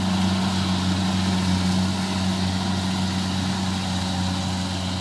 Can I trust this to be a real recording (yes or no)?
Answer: yes